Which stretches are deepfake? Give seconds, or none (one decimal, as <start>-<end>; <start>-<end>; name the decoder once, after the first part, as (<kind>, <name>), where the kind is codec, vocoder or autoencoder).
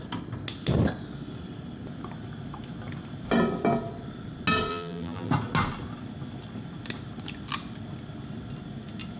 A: 4.7-5.3 (vocoder, BigVGAN v2)